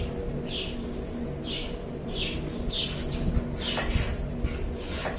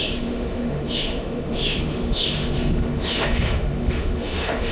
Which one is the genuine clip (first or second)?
first